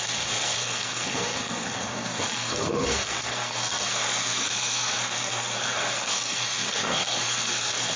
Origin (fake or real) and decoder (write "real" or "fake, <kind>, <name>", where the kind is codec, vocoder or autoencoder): fake, codec, SNAC